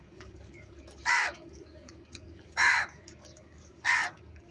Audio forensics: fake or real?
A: fake